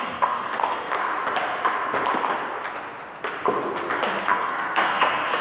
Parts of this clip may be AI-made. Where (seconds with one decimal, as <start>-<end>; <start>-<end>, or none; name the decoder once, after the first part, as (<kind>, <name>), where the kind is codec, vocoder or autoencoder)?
0.0-1.0 (codec, SNAC); 4.2-5.4